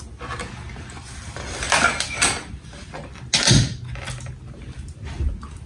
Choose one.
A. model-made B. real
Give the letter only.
B